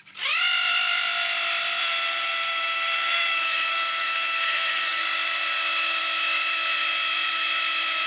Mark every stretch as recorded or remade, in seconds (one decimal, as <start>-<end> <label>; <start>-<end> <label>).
0.0-1.8 recorded; 1.8-5.0 remade; 5.0-8.1 recorded